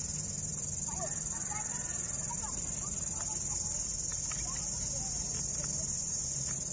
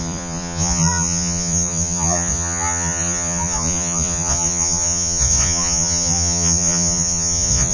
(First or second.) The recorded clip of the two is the first